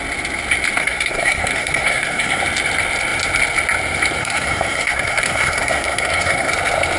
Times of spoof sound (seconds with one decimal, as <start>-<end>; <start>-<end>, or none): 0.8-2.4; 4.2-6.5